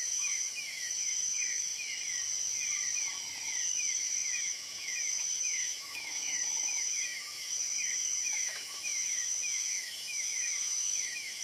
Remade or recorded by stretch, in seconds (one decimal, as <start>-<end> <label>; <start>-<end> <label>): 0.0-1.7 remade; 1.7-3.7 recorded; 3.7-11.4 remade